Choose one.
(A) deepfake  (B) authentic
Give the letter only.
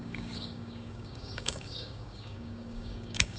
A